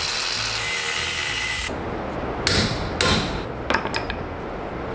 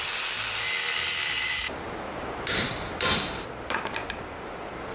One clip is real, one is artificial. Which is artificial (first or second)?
second